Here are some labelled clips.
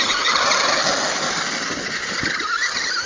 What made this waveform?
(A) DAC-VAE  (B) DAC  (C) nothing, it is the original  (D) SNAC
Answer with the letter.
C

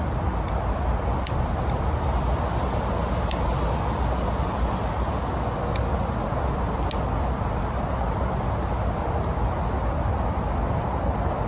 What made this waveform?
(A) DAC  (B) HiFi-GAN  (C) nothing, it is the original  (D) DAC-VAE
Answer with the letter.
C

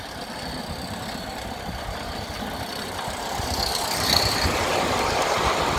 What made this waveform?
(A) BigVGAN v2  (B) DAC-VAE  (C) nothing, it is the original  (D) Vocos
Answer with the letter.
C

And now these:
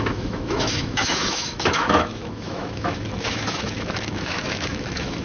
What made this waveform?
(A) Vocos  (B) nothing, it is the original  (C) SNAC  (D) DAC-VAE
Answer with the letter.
D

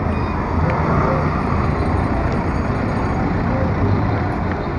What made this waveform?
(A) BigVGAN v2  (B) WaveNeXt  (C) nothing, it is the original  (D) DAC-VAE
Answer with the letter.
C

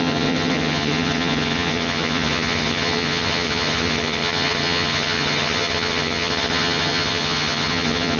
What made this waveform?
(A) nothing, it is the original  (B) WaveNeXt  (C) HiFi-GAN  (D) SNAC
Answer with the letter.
C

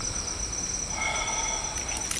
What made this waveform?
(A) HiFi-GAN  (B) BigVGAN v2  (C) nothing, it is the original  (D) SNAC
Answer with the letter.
C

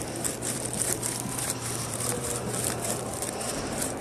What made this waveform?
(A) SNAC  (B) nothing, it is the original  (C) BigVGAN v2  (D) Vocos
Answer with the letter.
C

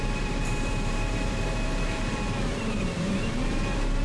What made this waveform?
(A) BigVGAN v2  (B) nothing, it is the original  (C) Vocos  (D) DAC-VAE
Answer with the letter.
A